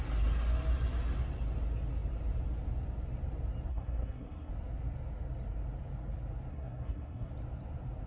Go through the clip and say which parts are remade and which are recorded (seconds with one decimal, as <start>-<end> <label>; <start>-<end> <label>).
0.0-3.7 recorded; 3.7-4.5 remade; 4.5-6.5 recorded; 6.5-7.3 remade; 7.3-8.1 recorded